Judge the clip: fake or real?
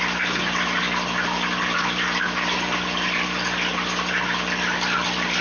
real